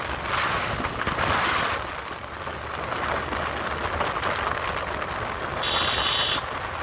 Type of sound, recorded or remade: recorded